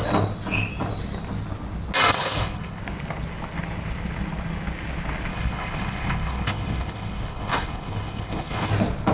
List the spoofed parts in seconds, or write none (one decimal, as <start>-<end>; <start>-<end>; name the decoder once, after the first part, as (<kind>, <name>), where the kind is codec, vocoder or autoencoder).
2.2-2.8 (codec, HILCodec); 5.3-8.7